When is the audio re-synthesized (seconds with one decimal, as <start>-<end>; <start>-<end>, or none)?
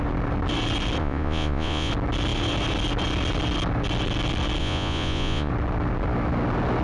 1.0-1.9; 4.6-5.5